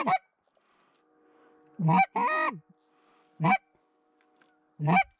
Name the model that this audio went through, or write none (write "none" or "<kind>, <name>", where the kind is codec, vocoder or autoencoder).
none